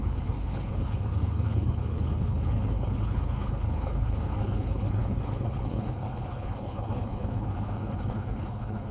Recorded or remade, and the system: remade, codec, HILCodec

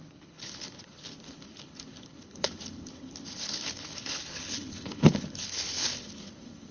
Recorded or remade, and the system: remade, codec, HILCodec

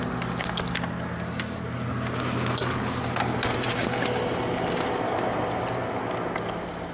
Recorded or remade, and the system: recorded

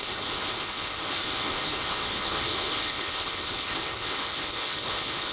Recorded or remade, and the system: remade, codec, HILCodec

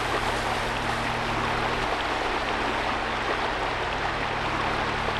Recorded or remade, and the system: recorded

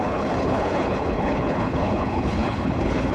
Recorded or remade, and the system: remade, codec, HILCodec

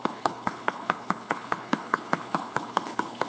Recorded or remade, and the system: remade, codec, HILCodec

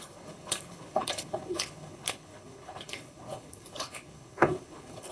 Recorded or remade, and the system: remade, codec, HILCodec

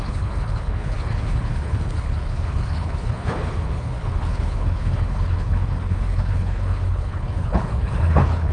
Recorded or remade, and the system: remade, codec, HILCodec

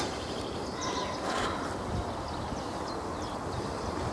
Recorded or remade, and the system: recorded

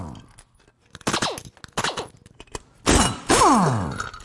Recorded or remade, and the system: recorded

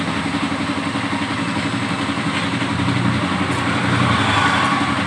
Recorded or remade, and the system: recorded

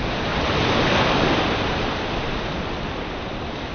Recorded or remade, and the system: recorded